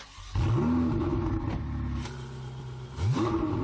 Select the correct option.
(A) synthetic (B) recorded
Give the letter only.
B